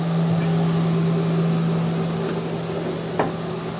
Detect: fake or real real